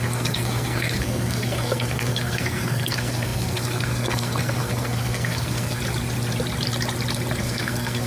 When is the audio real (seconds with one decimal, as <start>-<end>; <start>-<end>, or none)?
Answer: 5.8-7.4